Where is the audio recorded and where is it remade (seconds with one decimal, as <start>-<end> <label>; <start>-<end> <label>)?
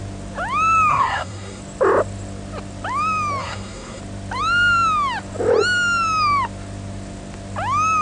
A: 0.0-0.9 recorded; 0.9-1.6 remade; 1.6-3.4 recorded; 3.4-4.0 remade; 4.0-8.0 recorded